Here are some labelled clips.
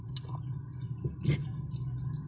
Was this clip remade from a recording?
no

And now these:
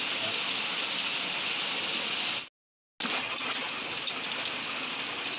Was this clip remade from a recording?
no